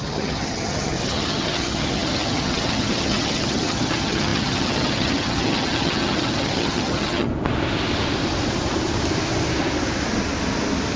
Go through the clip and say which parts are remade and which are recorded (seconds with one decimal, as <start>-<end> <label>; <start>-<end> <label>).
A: 0.0-7.3 remade; 7.3-11.0 recorded